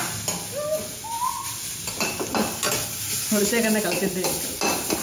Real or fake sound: real